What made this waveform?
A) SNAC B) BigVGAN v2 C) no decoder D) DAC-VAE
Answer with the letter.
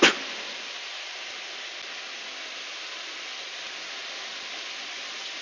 C